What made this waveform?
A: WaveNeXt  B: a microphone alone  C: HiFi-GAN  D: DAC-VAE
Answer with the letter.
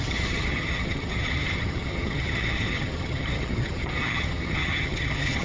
C